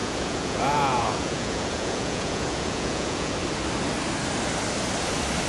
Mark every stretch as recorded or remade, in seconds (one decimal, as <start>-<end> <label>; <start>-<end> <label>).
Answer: 0.0-3.3 remade; 3.3-5.5 recorded